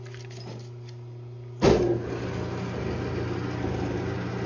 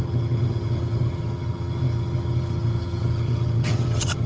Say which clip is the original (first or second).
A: first